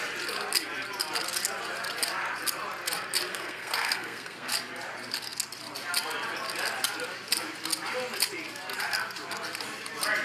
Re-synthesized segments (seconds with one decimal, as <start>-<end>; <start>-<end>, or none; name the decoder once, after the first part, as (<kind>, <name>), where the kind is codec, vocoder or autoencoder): 3.3-4.5 (codec, SNAC)